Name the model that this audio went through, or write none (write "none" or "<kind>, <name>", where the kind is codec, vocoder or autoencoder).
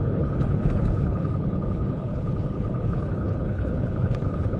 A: codec, HILCodec